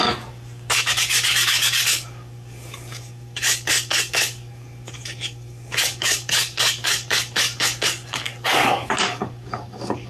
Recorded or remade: remade